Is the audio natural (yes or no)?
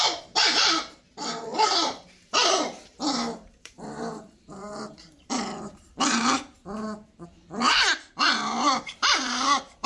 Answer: no